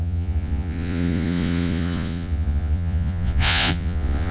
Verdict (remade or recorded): remade